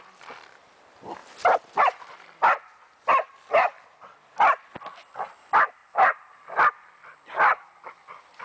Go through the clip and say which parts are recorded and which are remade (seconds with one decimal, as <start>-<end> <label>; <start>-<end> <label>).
0.0-1.2 remade; 1.2-1.8 recorded; 1.8-8.4 remade